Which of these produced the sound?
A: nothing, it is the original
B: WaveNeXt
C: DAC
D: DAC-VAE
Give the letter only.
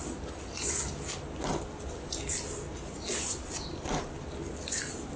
A